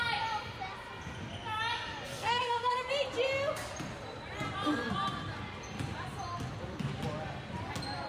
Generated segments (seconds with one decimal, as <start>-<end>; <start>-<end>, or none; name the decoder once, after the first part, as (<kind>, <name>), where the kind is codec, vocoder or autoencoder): 2.1-2.9 (codec, SNAC)